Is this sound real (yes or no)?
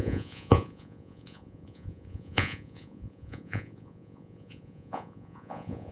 no